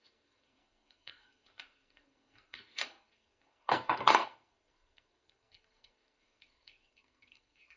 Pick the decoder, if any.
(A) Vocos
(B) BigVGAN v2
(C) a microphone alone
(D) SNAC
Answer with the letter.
D